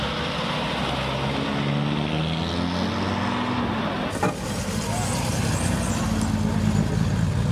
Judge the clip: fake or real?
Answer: real